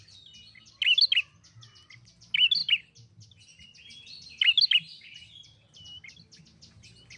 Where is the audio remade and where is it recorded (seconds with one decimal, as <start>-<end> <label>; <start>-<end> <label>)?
0.0-7.2 recorded